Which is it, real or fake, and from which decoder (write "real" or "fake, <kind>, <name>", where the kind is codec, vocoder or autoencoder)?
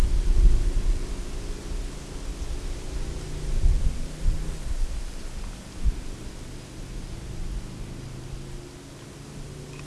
real